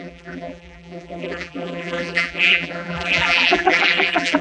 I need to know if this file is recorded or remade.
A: remade